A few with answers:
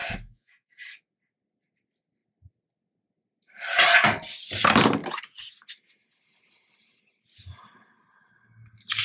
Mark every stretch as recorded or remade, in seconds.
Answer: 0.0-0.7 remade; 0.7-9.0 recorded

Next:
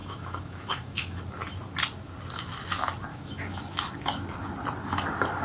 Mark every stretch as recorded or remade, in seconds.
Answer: 0.0-1.2 remade; 1.2-3.1 recorded; 3.1-3.6 remade; 3.6-5.4 recorded